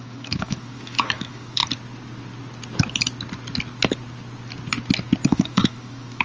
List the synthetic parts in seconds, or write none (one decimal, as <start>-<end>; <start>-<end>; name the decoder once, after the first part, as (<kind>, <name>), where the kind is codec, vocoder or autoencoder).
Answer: 0.0-1.6 (autoencoder, DAC-VAE); 5.3-6.2